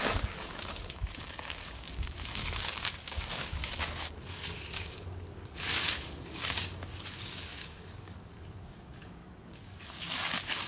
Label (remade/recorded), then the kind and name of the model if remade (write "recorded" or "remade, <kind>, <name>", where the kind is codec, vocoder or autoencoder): remade, codec, DAC